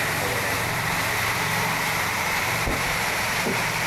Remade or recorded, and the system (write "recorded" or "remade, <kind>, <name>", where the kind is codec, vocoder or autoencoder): remade, vocoder, BigVGAN v2